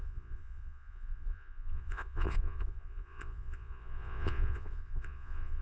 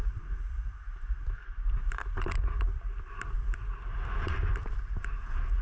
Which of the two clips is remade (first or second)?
first